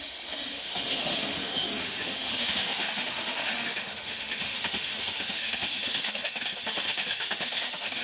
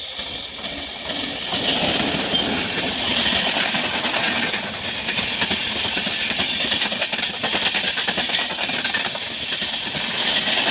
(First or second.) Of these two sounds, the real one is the second